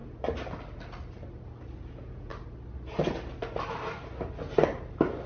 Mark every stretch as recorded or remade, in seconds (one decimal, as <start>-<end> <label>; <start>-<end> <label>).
0.0-1.9 recorded; 1.9-2.3 remade; 2.3-5.3 recorded

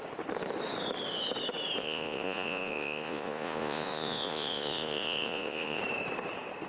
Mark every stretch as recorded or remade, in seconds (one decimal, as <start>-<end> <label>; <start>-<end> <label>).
0.0-1.8 recorded; 1.8-5.8 remade; 5.8-6.7 recorded